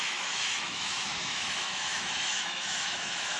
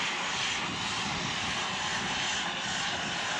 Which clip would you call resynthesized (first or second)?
first